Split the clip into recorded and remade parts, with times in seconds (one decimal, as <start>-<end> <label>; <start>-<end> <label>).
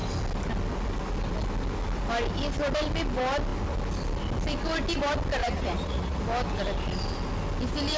0.0-5.4 recorded; 5.4-6.2 remade; 6.2-8.0 recorded